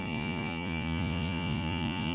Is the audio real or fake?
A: fake